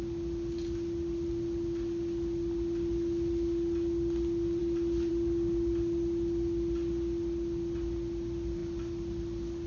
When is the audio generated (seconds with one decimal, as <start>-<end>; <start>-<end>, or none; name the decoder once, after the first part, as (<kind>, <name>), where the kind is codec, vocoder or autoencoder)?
none